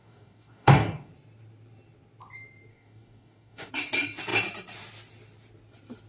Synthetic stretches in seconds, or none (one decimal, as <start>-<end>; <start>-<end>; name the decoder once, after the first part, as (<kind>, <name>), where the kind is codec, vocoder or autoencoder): 0.0-1.1 (codec, DAC); 2.7-3.7